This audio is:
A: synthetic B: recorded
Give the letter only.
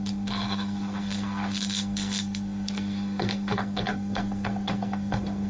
A